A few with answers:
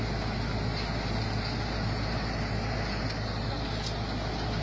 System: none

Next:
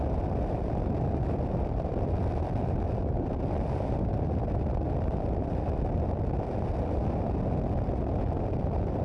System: none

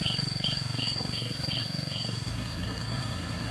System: codec, SNAC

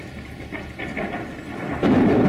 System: none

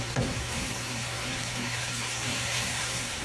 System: codec, SNAC